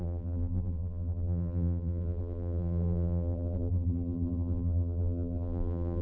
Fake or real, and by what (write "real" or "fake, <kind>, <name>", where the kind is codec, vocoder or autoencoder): fake, vocoder, BigVGAN v2